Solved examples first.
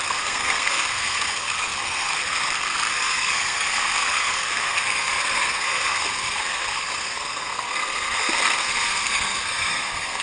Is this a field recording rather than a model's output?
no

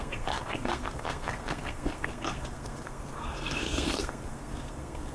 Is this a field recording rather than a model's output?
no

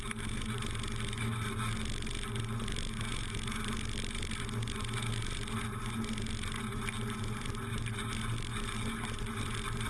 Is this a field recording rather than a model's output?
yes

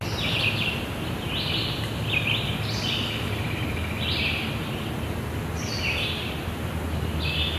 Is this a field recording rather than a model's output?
yes